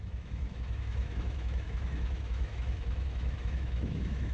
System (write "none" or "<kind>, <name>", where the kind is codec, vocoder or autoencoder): autoencoder, DAC-VAE